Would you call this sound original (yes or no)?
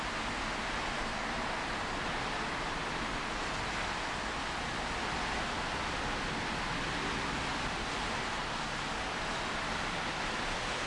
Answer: yes